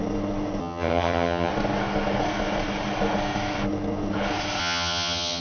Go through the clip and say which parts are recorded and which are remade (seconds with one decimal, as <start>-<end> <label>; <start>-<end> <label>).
0.0-0.6 recorded; 0.6-1.5 remade; 1.5-4.6 recorded; 4.6-5.4 remade

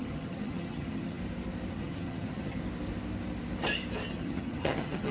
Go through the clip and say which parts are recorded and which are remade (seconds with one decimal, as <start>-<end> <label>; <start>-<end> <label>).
0.0-1.2 remade; 1.2-1.7 recorded; 1.7-2.6 remade; 2.6-4.1 recorded; 4.1-5.1 remade

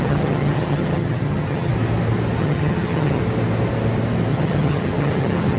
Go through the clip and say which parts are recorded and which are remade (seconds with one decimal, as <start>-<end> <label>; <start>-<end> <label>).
0.0-1.7 remade; 1.7-2.4 recorded; 2.4-3.2 remade; 3.2-4.3 recorded; 4.3-5.6 remade

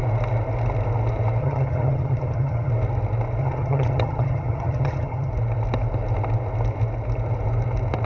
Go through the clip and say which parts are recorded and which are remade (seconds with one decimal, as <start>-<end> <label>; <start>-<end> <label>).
0.0-1.4 recorded; 1.4-2.7 remade; 2.7-3.4 recorded; 3.4-5.3 remade; 5.3-8.1 recorded

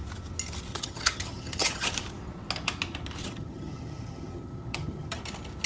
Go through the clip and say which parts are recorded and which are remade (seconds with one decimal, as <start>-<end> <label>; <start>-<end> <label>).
0.0-0.7 recorded; 0.7-1.9 remade; 1.9-3.2 recorded; 3.2-5.2 remade; 5.2-5.7 recorded

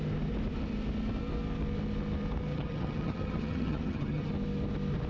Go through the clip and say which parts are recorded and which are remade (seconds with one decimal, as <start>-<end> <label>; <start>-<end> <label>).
0.0-2.5 recorded; 2.5-4.3 remade; 4.3-5.1 recorded